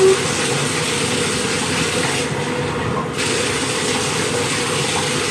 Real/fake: real